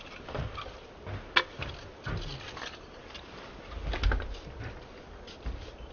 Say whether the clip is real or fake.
real